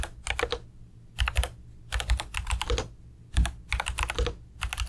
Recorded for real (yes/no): yes